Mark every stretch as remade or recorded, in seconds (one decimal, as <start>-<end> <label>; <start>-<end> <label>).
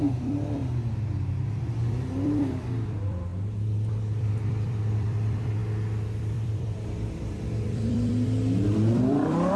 0.0-0.6 remade; 0.6-1.5 recorded; 1.5-3.3 remade; 3.3-3.9 recorded; 3.9-5.6 remade; 5.6-6.2 recorded; 6.2-9.6 remade